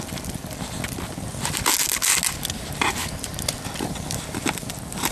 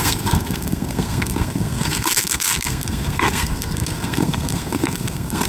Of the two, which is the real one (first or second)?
first